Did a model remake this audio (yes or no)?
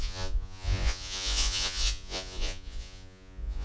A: yes